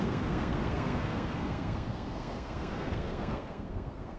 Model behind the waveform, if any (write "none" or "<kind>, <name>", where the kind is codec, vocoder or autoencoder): codec, SNAC